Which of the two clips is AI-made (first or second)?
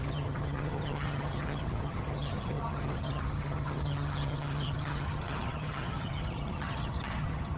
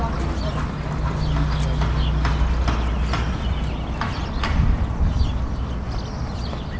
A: first